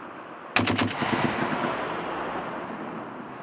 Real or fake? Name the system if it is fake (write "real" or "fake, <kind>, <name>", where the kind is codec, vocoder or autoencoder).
real